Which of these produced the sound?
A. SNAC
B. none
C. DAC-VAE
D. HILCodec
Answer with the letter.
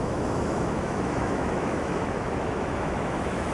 C